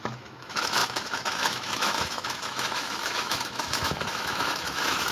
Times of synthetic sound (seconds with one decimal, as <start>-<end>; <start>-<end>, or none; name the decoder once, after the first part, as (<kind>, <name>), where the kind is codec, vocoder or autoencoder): 0.0-5.1 (autoencoder, DAC-VAE)

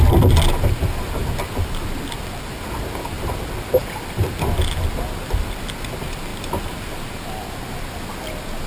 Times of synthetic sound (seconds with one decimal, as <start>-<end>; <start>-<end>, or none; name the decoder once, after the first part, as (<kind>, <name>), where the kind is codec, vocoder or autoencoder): none

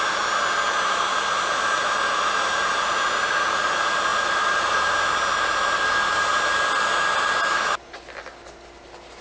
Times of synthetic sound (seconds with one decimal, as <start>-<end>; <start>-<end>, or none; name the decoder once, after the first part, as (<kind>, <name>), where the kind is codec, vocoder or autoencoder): none

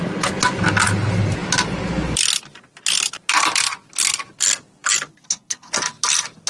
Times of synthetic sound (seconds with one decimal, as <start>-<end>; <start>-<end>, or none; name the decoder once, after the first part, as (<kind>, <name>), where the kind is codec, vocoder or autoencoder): 5.1-5.7 (codec, SNAC)

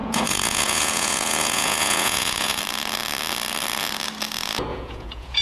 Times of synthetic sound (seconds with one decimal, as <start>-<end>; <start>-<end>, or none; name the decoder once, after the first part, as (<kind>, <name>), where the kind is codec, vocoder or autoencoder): 0.0-2.6 (vocoder, Vocos); 4.7-5.4

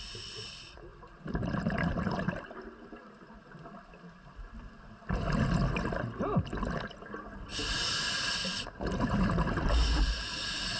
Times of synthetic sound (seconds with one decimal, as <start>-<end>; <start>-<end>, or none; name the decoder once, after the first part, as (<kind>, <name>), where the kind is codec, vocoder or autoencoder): 0.9-5.0 (vocoder, BigVGAN v2)

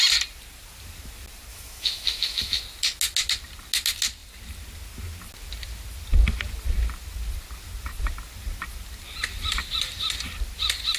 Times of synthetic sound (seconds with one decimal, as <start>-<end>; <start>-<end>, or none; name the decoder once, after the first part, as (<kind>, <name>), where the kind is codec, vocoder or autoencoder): 1.5-2.6 (autoencoder, DAC-VAE)

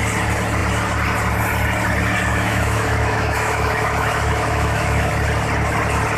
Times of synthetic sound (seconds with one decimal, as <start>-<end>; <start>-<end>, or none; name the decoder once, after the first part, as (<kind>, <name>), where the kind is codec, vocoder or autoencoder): 2.3-5.1 (autoencoder, DAC-VAE)